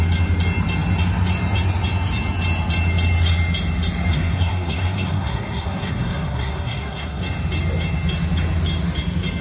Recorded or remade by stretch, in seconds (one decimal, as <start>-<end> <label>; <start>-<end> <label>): 0.0-4.1 recorded; 4.1-7.2 remade; 7.2-9.4 recorded